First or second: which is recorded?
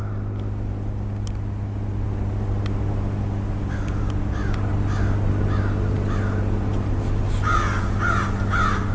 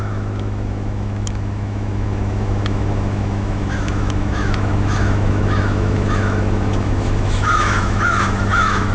first